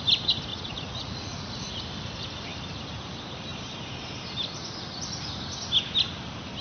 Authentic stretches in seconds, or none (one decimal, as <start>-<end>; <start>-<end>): 0.0-0.5; 1.8-6.6